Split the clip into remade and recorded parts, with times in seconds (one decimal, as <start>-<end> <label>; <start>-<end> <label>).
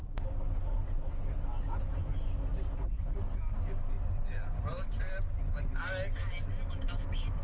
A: 0.0-7.4 recorded